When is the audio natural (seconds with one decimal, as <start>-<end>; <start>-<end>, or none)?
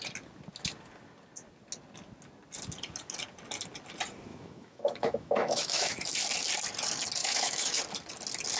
0.0-4.3; 6.0-7.2; 7.8-8.6